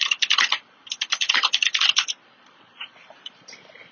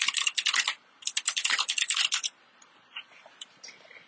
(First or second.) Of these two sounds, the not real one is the first